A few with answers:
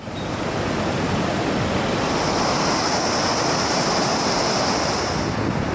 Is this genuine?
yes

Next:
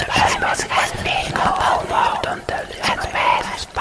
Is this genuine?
no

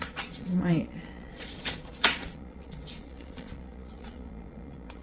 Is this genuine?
no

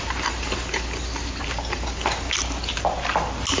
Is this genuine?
yes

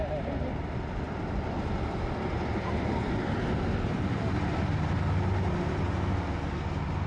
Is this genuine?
yes